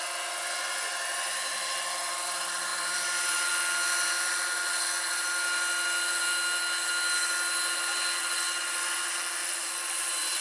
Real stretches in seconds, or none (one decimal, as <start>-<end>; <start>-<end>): 0.0-2.7; 3.5-10.4